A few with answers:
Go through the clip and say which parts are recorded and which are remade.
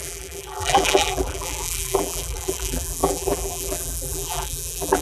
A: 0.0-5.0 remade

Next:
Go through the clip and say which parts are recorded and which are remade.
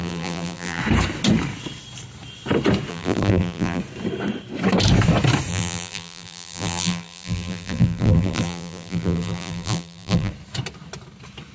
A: 0.0-0.8 remade; 0.8-2.9 recorded; 2.9-3.8 remade; 3.8-5.5 recorded; 5.5-10.3 remade; 10.3-11.5 recorded